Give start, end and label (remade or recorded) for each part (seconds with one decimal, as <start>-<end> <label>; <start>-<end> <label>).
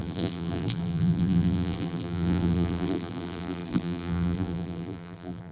0.0-5.5 remade